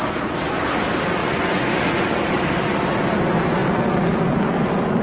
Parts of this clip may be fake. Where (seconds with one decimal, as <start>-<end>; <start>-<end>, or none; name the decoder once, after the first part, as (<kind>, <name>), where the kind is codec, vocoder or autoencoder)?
1.2-2.3 (vocoder, Vocos)